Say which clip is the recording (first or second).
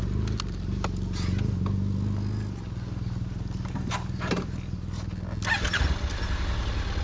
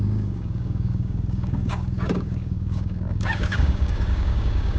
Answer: first